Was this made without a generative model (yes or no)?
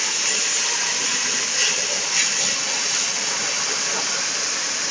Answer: yes